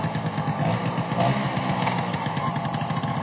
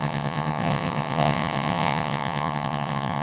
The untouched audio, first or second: first